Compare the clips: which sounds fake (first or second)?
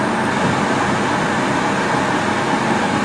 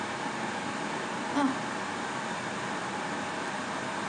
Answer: second